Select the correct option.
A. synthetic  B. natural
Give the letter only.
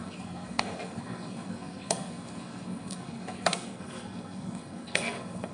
A